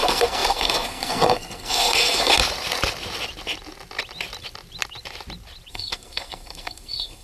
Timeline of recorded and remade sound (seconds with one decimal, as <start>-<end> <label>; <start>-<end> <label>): 0.0-2.4 remade; 2.4-5.7 recorded; 5.7-7.2 remade